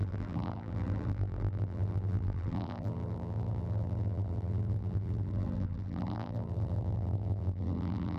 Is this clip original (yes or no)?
no